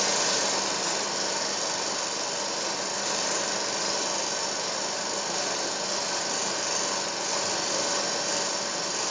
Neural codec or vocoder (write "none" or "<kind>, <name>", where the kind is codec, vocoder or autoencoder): none